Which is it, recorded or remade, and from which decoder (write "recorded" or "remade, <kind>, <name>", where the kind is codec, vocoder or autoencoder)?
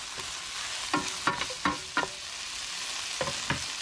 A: recorded